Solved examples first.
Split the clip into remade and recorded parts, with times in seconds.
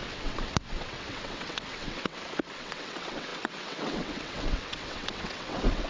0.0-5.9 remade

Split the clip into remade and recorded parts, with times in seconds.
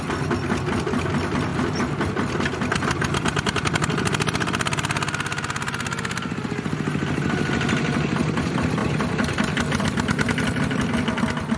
0.0-11.6 recorded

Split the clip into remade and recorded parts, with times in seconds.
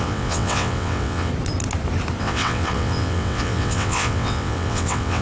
0.0-1.3 remade; 1.3-2.2 recorded; 2.2-5.2 remade